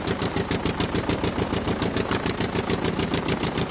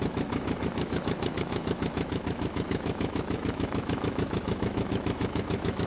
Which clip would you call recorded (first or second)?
first